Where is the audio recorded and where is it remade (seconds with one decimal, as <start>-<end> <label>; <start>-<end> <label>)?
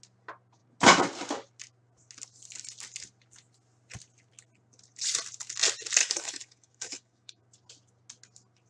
0.0-6.0 recorded; 6.0-7.4 remade; 7.4-8.7 recorded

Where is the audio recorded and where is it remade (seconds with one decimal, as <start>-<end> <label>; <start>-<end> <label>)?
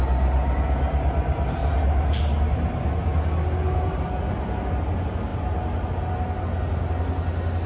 0.0-7.7 recorded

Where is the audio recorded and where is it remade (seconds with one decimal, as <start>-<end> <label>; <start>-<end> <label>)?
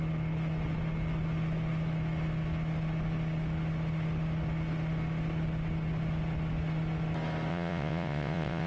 0.0-7.5 recorded; 7.5-8.7 remade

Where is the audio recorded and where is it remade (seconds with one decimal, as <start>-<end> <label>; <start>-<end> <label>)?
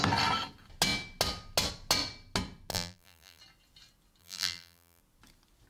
0.0-2.7 recorded; 2.7-3.4 remade; 3.4-4.2 recorded; 4.2-5.0 remade; 5.0-5.7 recorded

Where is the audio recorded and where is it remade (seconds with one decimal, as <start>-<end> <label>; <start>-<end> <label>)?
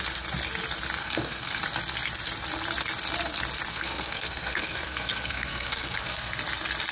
0.0-1.0 recorded; 1.0-1.6 remade; 1.6-3.7 recorded; 3.7-6.3 remade; 6.3-6.9 recorded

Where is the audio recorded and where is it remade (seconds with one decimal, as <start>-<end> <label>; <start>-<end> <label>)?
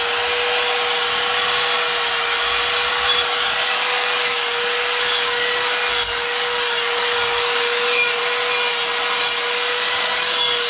0.0-2.9 recorded; 2.9-8.2 remade; 8.2-9.7 recorded; 9.7-10.7 remade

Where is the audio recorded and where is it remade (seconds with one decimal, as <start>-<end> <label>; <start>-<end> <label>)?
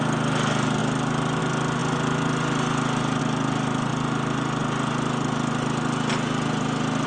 0.0-7.1 recorded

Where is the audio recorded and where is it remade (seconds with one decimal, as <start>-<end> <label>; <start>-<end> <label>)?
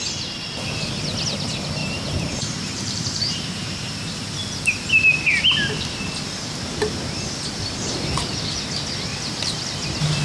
0.0-1.8 recorded; 1.8-4.0 remade; 4.0-9.1 recorded; 9.1-10.2 remade